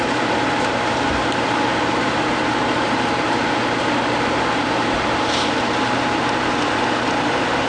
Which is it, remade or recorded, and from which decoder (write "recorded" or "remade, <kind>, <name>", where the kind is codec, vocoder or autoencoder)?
remade, vocoder, BigVGAN v2